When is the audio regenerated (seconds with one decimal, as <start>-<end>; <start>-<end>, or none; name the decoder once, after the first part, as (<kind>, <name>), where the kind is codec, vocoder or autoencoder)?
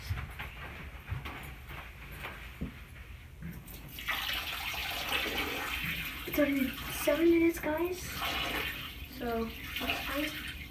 none